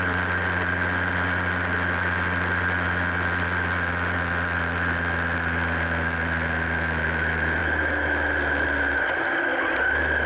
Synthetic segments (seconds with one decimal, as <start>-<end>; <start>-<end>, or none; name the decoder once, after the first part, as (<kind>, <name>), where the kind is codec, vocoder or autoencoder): none